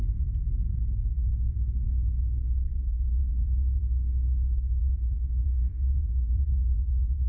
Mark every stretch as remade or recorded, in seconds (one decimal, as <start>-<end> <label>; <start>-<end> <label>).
0.0-0.9 recorded; 0.9-1.3 remade; 1.3-2.7 recorded; 2.7-3.8 remade; 3.8-4.8 recorded; 4.8-7.3 remade